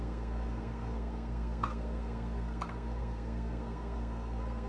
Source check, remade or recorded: remade